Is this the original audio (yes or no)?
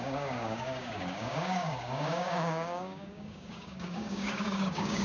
no